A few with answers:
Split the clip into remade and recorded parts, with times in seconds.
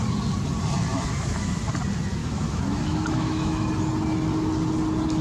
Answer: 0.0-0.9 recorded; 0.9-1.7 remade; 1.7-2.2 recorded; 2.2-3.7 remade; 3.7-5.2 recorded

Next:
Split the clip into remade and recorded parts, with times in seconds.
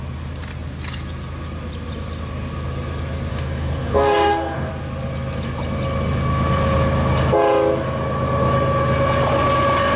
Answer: 0.0-3.3 recorded; 3.3-4.7 remade; 4.7-10.0 recorded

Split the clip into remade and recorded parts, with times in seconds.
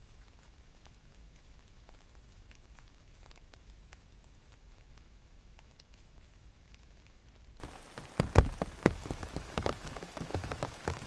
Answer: 0.0-7.2 remade; 7.2-8.7 recorded; 8.7-11.1 remade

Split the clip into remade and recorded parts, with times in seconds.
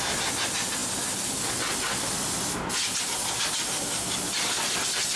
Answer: 0.0-5.2 recorded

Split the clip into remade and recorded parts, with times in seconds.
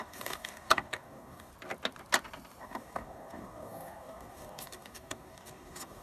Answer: 0.0-1.5 remade; 1.5-2.6 recorded; 2.6-6.0 remade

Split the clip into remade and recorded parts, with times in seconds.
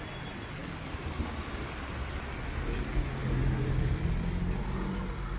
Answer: 0.0-5.4 recorded